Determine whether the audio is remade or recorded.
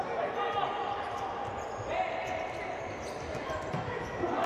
recorded